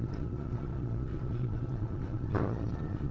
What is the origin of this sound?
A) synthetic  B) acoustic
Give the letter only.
A